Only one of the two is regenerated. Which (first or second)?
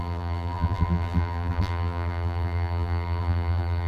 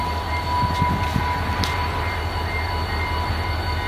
first